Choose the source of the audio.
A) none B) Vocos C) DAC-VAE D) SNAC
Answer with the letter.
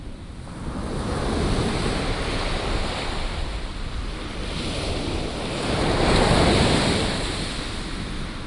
A